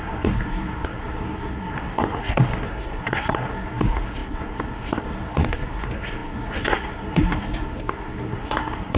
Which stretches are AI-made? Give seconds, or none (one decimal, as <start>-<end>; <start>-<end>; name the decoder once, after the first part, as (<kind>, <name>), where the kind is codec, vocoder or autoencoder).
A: 0.0-9.0 (codec, SNAC)